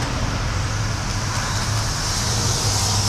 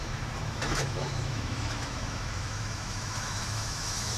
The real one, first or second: first